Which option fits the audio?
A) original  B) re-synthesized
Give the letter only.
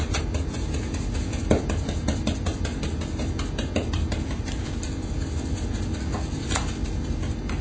A